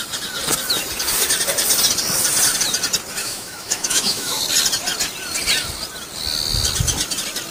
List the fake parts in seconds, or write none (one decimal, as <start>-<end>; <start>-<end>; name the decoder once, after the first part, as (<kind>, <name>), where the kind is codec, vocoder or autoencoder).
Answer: 3.2-4.4 (autoencoder, DAC-VAE)